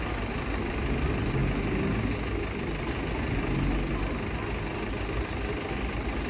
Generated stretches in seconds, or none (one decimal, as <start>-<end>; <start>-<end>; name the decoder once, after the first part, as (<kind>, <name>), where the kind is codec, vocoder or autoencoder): none